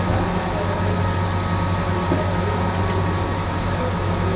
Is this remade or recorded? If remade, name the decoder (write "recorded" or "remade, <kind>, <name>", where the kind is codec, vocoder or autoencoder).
recorded